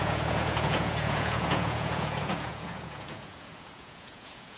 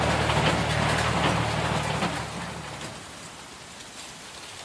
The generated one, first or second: first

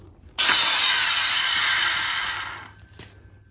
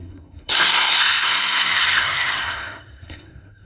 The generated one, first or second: second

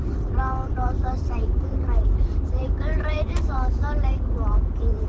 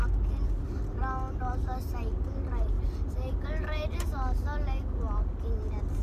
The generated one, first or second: first